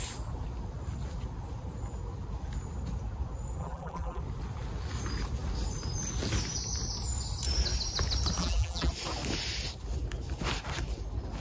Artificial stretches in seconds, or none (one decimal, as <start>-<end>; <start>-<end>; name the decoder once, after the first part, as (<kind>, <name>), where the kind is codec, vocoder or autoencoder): 3.6-4.2 (vocoder, BigVGAN v2); 8.4-8.9